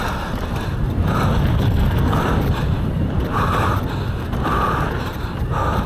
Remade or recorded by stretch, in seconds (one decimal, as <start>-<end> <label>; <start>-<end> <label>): 0.0-1.5 recorded; 1.5-2.2 remade; 2.2-5.9 recorded